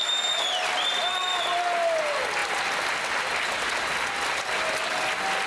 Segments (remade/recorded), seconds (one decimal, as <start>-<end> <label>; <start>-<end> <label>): 0.0-5.5 recorded